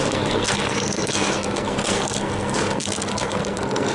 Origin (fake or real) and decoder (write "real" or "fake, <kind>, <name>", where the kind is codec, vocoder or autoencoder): fake, codec, SNAC